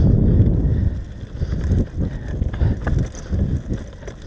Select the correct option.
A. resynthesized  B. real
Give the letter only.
B